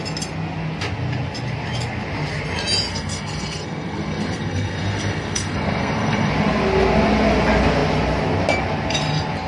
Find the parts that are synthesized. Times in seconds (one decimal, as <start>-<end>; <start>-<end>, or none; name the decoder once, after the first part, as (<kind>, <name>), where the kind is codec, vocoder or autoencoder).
2.9-6.3 (codec, SNAC)